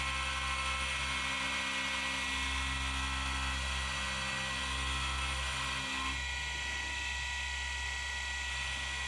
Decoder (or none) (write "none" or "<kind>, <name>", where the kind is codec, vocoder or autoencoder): none